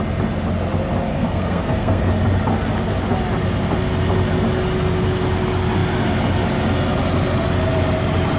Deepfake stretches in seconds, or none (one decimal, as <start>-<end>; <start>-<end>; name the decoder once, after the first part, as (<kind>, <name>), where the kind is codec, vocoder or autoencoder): 1.1-2.1 (codec, SNAC)